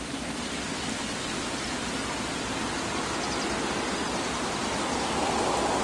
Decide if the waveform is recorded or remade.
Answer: recorded